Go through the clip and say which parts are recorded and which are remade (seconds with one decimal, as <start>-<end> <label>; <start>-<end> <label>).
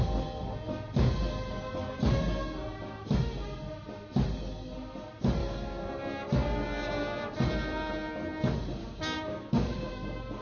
0.0-5.4 recorded; 5.4-5.9 remade; 5.9-8.8 recorded; 8.8-9.9 remade; 9.9-10.4 recorded